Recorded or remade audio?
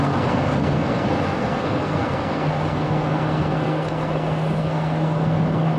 remade